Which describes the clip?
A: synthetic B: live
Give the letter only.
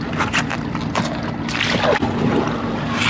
B